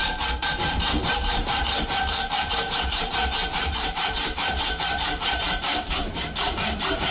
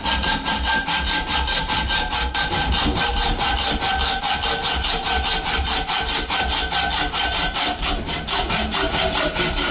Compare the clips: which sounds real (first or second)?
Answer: second